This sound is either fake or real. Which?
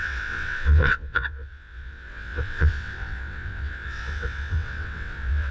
fake